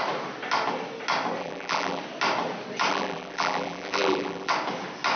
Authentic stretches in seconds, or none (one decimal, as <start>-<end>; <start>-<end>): 0.0-1.4; 2.0-2.9; 4.5-5.2